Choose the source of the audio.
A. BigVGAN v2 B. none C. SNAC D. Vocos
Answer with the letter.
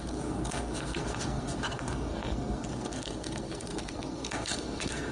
C